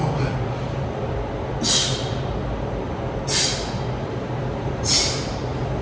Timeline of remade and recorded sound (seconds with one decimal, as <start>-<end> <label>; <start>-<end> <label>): 0.0-4.0 recorded; 4.0-5.8 remade